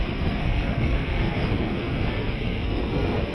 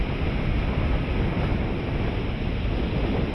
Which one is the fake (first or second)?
first